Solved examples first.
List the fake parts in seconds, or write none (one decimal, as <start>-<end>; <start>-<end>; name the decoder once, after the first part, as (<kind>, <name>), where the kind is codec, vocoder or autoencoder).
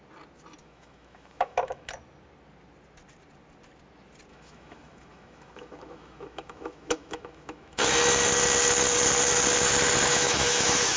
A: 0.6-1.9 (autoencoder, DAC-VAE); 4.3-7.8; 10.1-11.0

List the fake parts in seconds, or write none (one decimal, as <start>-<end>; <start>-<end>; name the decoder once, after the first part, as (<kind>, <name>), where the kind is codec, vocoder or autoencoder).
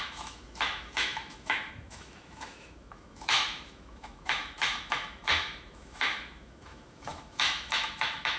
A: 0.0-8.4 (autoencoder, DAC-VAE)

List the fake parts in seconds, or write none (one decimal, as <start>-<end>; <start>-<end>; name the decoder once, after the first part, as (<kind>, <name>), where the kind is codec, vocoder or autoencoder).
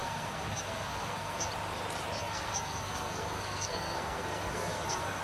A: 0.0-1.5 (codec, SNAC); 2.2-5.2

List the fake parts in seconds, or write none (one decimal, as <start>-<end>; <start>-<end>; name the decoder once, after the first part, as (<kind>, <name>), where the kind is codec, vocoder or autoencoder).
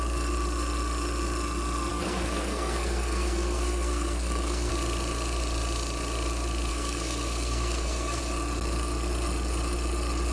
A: 1.9-4.7 (codec, SNAC); 6.7-8.2